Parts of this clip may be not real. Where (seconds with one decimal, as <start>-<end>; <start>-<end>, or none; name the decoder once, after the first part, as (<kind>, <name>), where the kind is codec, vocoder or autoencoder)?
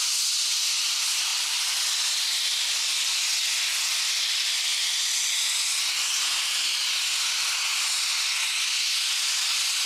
none